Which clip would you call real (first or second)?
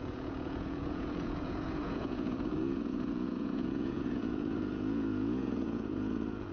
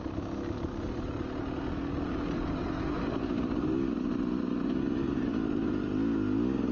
second